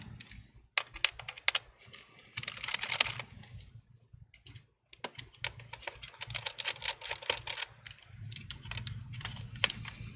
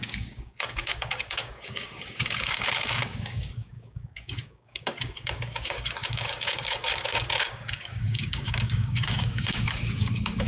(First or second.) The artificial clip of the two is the second